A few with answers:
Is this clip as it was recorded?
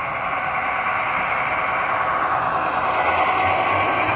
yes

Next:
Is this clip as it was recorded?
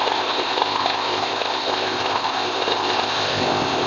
no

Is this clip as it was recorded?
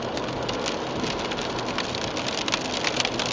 yes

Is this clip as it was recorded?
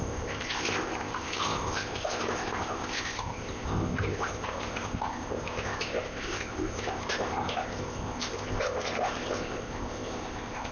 no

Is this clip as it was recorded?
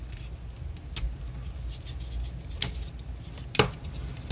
yes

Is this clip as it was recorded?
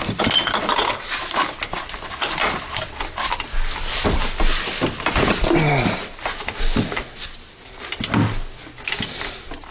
yes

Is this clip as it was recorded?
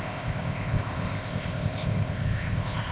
no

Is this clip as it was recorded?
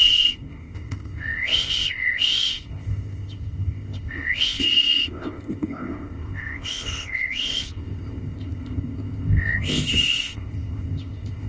no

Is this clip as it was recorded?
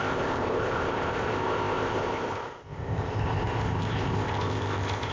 no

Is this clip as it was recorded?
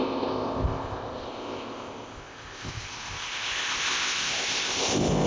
no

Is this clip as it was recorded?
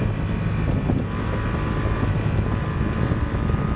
yes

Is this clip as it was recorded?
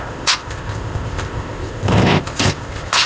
no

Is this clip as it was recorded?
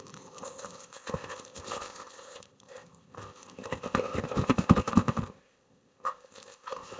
no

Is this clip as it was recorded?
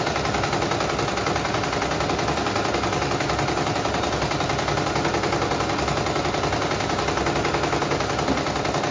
yes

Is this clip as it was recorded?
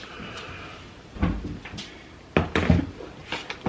yes